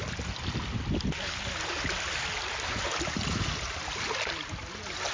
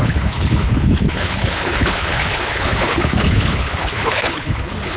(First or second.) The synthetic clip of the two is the second